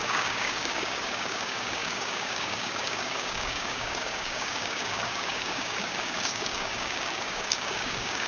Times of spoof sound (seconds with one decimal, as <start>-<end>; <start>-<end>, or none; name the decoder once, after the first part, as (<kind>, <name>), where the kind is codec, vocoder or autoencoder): 0.0-8.3 (codec, DAC)